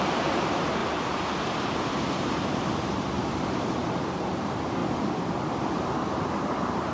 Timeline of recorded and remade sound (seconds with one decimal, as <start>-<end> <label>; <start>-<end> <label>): 0.0-0.8 remade; 0.8-1.8 recorded; 1.8-4.8 remade; 4.8-5.7 recorded; 5.7-6.9 remade